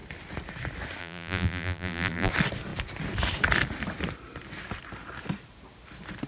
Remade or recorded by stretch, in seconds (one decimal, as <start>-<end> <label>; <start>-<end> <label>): 0.0-1.0 recorded; 1.0-2.3 remade; 2.3-6.3 recorded